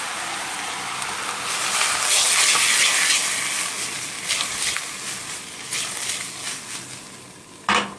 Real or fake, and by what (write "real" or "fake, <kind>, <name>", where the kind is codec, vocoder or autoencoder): real